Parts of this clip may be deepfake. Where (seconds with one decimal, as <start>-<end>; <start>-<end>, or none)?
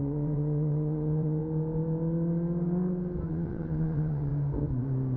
0.0-1.4; 3.3-4.3